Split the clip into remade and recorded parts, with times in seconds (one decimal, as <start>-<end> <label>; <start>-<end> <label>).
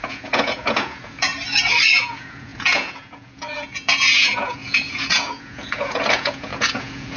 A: 0.0-1.3 remade; 1.3-2.0 recorded; 2.0-7.2 remade